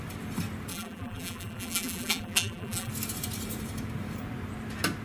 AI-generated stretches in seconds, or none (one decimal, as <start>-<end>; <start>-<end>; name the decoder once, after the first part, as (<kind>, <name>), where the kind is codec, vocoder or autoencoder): 0.7-2.9 (vocoder, BigVGAN v2)